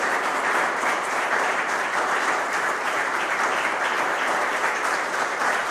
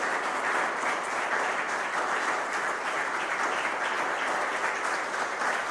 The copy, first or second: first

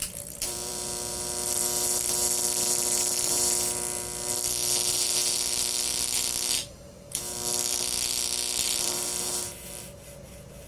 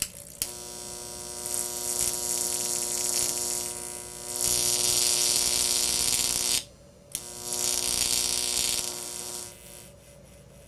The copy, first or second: first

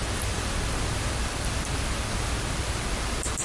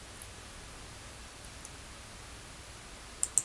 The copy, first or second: first